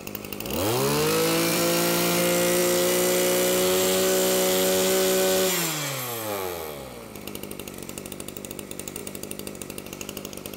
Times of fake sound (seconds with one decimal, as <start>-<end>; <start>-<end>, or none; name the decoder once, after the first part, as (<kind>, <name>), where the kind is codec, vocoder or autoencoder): 1.5-2.2 (vocoder, BigVGAN v2); 9.0-10.6